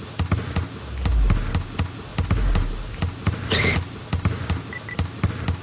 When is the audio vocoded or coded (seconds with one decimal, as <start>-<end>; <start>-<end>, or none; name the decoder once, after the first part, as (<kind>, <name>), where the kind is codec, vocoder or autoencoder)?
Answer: none